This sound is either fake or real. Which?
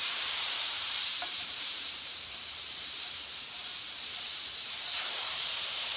fake